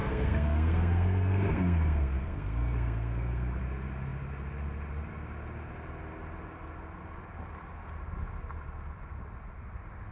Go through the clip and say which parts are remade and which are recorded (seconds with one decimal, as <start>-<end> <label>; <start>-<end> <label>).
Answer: 0.0-3.6 remade; 3.6-10.1 recorded